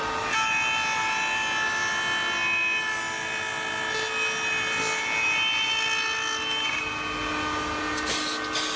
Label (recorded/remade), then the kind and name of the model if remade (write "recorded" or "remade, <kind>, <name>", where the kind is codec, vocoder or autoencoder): recorded